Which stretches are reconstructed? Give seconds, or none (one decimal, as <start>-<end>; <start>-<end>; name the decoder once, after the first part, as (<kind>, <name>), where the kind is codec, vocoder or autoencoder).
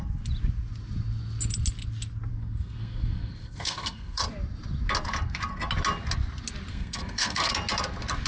2.3-4.2 (codec, SNAC); 6.7-7.5